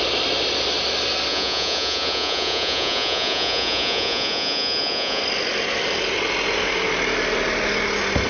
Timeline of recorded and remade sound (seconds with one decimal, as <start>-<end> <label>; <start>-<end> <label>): 0.0-1.3 recorded; 1.3-5.2 remade; 5.2-8.3 recorded